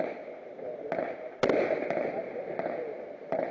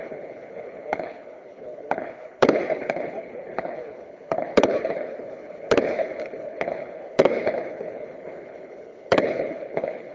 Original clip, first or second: first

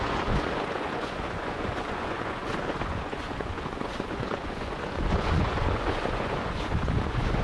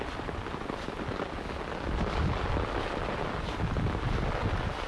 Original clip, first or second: second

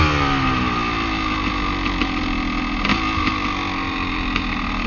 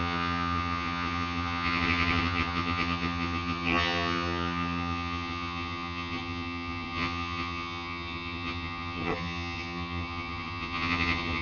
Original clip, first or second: first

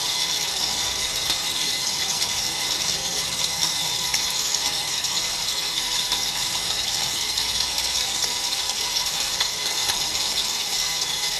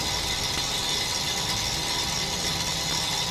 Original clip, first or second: second